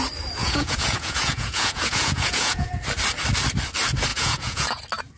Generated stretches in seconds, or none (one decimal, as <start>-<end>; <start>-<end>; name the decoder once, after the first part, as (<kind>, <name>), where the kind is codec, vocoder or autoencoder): 0.4-2.7 (vocoder, Vocos); 4.1-4.8

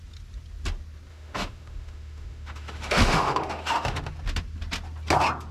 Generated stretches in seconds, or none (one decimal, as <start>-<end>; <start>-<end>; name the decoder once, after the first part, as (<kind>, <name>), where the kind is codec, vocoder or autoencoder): 1.1-4.1 (autoencoder, DAC-VAE)

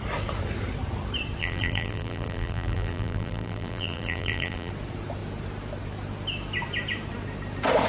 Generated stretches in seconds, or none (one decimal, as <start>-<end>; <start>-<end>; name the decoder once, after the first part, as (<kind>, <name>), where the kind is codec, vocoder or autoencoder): 1.4-4.7 (vocoder, BigVGAN v2)